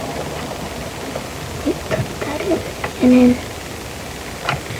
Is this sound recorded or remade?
recorded